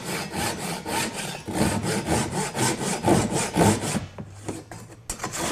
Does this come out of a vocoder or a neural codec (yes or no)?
no